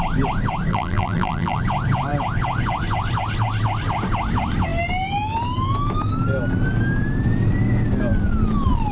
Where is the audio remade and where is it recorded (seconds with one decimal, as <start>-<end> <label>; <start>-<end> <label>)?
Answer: 0.0-0.7 recorded; 0.7-1.6 remade; 1.6-8.9 recorded